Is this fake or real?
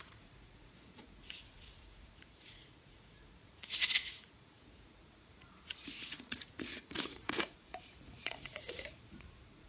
fake